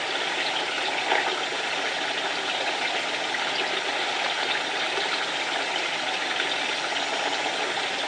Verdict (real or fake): real